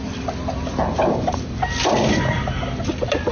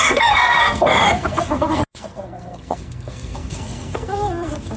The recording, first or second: first